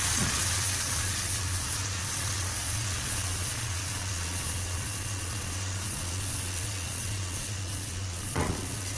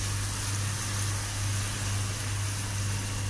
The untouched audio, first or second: second